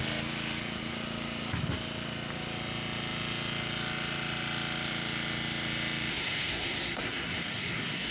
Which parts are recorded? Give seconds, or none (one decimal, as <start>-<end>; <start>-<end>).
0.0-6.1